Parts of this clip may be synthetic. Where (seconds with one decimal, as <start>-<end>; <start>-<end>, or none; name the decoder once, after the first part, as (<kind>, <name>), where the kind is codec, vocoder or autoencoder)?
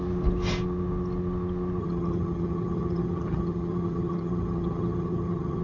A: 1.8-5.6 (vocoder, HiFi-GAN)